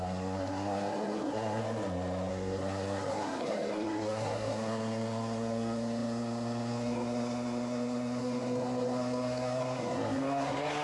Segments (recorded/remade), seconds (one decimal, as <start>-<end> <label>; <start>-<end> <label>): 0.0-1.6 remade; 1.6-2.3 recorded; 2.3-10.8 remade